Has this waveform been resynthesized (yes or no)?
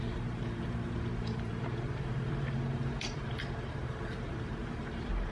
yes